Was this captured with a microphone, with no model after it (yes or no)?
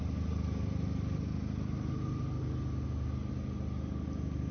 yes